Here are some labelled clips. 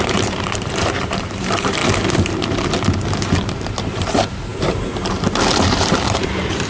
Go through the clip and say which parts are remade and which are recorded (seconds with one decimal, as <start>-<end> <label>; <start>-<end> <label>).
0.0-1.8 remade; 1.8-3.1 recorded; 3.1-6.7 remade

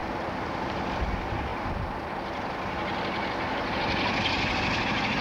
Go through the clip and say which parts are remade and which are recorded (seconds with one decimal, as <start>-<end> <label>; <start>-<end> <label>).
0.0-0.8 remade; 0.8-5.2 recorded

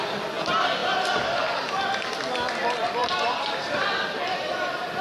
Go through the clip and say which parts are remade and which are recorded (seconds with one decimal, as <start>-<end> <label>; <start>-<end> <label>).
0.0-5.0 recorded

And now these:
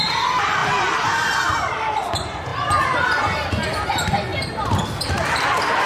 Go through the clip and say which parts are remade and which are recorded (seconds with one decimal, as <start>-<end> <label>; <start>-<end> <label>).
0.0-4.3 remade; 4.3-5.0 recorded; 5.0-5.9 remade

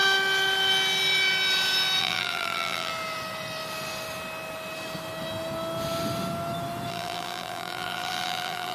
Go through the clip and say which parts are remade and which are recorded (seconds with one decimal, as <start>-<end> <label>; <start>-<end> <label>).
0.0-2.0 recorded; 2.0-2.9 remade; 2.9-6.9 recorded; 6.9-8.7 remade

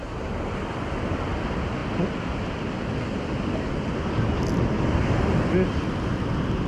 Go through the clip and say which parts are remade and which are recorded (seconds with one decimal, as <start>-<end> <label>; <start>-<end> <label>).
0.0-6.7 recorded